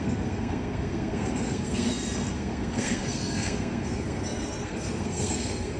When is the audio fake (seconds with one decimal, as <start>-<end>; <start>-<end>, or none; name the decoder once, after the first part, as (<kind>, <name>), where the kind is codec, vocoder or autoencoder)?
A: 0.0-5.8 (codec, SNAC)